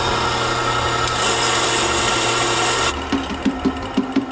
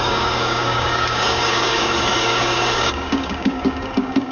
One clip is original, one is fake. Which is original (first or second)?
first